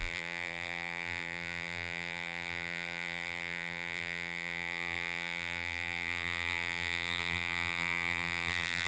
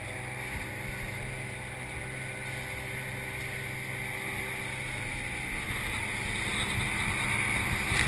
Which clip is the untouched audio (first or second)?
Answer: second